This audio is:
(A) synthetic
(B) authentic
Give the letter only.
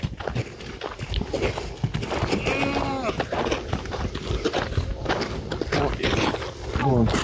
B